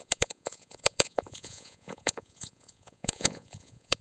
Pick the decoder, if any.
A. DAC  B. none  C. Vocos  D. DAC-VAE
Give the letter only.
C